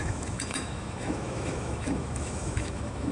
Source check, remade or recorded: remade